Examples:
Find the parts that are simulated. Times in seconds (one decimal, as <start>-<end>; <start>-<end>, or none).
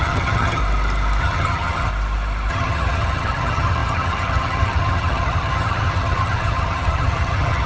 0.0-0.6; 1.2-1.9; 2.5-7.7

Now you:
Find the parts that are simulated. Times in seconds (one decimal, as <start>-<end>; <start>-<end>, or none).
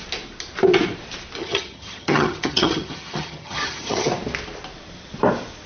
1.4-4.1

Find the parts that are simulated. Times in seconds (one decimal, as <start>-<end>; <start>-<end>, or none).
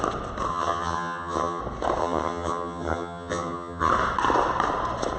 0.5-1.6; 2.0-3.9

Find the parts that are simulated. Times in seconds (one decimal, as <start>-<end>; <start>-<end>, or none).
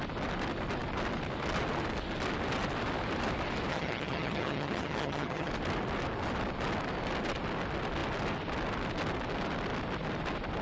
3.7-5.5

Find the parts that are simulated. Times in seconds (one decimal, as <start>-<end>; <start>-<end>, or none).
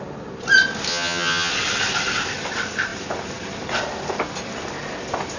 0.9-1.5